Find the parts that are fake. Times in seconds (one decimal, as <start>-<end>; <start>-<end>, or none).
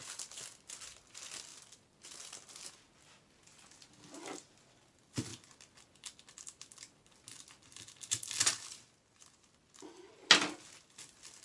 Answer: none